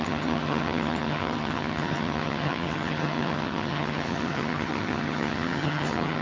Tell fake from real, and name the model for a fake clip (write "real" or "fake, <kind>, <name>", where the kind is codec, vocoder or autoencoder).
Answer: fake, vocoder, HiFi-GAN